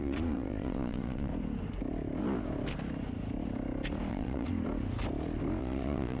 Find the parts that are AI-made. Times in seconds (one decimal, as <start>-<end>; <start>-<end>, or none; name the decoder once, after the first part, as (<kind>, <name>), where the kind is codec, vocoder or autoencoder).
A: 0.0-1.3 (vocoder, Vocos); 4.1-4.5; 5.6-6.2